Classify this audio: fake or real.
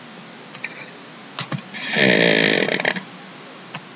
real